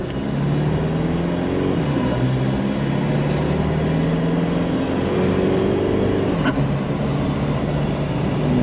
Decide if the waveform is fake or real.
real